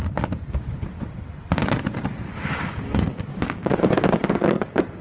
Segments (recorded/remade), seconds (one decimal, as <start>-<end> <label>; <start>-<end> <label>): 0.0-2.3 recorded; 2.3-5.0 remade